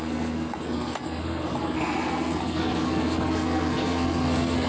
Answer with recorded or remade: remade